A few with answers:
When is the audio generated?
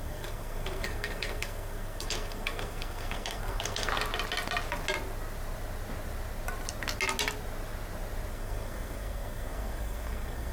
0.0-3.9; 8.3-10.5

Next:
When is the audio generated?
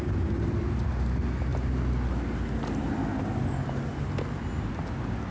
none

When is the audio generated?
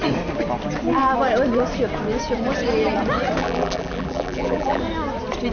3.4-4.8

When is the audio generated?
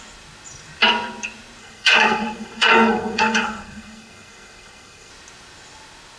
1.6-5.1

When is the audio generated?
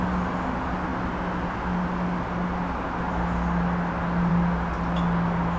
none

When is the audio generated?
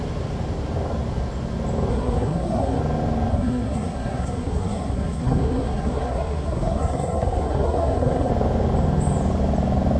1.9-2.8; 3.3-8.3